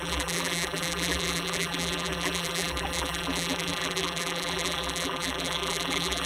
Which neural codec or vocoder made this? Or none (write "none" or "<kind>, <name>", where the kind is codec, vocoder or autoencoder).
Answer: vocoder, BigVGAN v2